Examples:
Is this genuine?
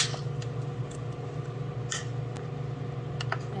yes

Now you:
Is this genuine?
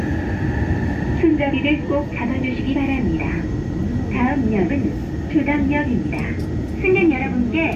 yes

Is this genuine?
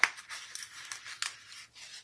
yes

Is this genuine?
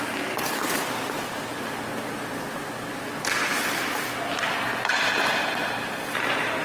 yes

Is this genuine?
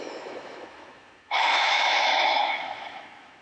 no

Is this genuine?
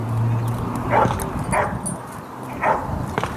yes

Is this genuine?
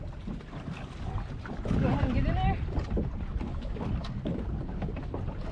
yes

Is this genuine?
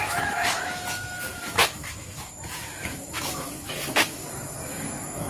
no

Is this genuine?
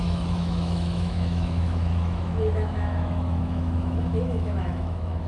no